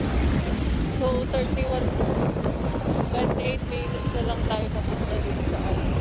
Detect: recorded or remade recorded